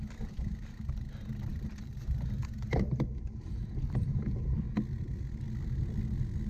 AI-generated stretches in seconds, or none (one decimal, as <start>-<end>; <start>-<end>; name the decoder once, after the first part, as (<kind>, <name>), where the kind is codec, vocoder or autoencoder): 1.5-3.8 (vocoder, BigVGAN v2)